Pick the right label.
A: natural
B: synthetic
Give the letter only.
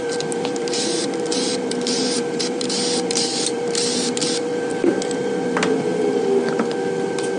B